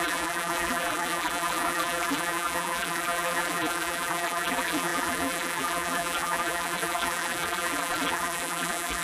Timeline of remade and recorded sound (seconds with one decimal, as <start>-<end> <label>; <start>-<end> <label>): 0.0-9.0 remade